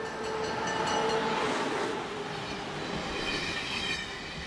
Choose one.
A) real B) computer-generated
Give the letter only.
A